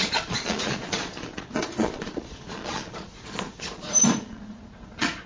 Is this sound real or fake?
fake